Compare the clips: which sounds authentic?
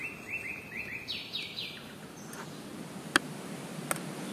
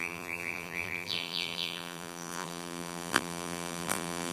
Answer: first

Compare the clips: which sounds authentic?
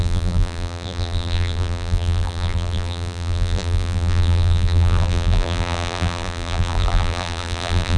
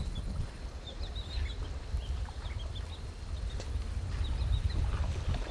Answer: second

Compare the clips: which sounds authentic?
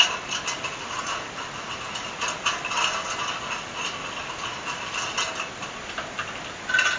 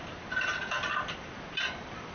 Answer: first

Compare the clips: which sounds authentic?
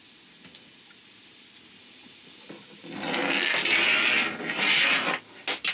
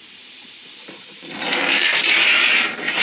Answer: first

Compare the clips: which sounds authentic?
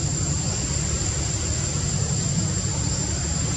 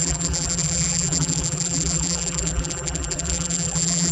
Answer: first